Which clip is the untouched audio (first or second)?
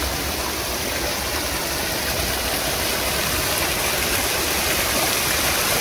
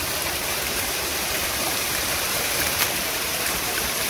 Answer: first